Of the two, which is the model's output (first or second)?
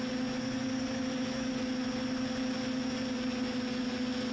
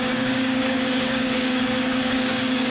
second